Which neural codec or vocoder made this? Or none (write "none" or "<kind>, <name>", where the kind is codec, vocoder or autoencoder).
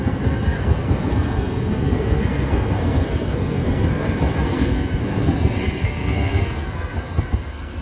codec, SNAC